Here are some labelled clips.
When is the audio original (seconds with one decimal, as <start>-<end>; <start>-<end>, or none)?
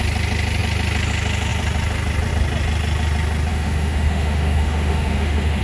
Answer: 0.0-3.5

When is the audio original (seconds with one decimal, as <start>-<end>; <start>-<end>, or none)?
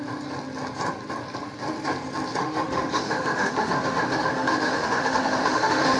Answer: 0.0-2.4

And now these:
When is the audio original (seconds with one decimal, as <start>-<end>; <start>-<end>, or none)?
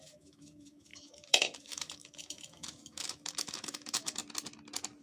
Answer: 4.2-5.0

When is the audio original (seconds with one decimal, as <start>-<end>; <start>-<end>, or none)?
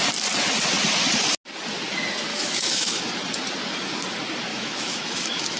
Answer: 0.0-2.3; 3.0-4.5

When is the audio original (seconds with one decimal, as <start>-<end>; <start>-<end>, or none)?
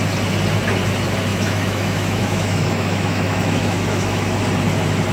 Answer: 0.0-1.3; 4.4-5.1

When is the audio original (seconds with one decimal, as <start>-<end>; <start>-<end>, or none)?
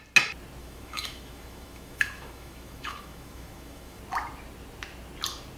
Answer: 0.0-0.6; 4.0-5.6